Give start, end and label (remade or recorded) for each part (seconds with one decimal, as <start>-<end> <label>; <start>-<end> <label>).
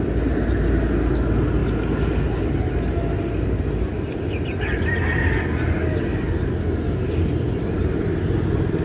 0.0-8.8 recorded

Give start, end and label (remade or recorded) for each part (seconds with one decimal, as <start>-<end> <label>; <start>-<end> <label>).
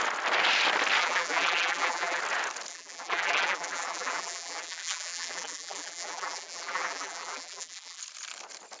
0.0-1.0 recorded; 1.0-2.2 remade; 2.2-2.7 recorded; 2.7-8.0 remade; 8.0-8.8 recorded